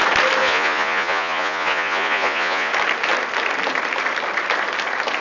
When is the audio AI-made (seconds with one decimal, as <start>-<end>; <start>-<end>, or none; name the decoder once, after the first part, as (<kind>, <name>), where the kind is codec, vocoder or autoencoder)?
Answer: 0.4-2.7 (vocoder, Vocos)